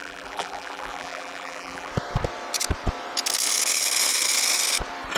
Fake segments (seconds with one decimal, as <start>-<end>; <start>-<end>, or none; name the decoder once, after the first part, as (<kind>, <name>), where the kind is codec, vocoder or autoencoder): 0.0-1.9 (vocoder, BigVGAN v2)